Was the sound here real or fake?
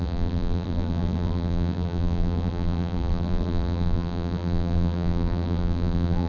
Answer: fake